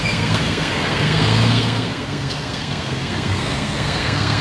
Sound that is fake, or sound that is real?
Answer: fake